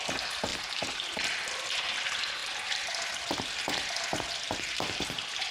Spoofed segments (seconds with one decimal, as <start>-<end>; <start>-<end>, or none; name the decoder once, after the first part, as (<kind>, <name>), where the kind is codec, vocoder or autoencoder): none